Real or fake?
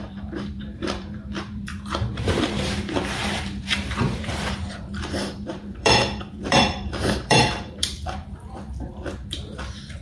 fake